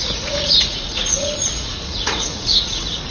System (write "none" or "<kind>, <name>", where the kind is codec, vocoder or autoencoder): vocoder, Vocos